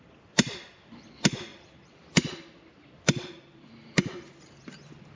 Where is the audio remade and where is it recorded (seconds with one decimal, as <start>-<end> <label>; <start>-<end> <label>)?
0.0-5.2 remade